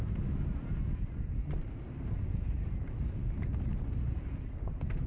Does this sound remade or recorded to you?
recorded